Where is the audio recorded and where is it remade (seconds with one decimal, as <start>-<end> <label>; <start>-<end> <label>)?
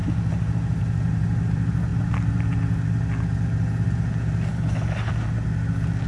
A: 0.0-4.5 recorded; 4.5-5.1 remade; 5.1-6.1 recorded